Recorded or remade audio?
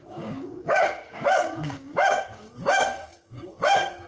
remade